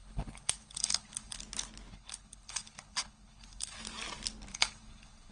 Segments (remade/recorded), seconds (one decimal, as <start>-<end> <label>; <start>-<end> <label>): 0.0-1.4 remade; 1.4-1.9 recorded; 1.9-3.8 remade; 3.8-4.5 recorded; 4.5-5.3 remade